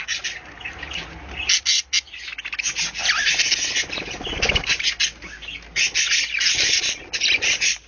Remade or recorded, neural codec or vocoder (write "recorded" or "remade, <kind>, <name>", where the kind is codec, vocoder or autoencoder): recorded